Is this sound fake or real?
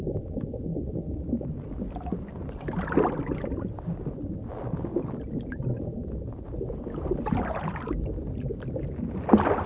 real